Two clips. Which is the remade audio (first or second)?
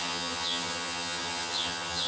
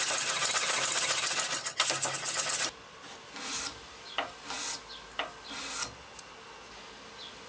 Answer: first